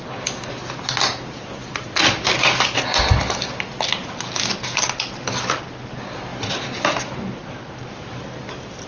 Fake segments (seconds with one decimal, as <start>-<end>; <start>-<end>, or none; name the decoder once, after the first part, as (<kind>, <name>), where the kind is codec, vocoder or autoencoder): 6.3-7.0 (vocoder, BigVGAN v2)